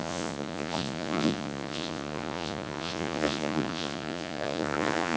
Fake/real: fake